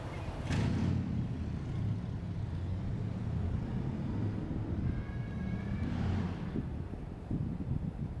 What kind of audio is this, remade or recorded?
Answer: recorded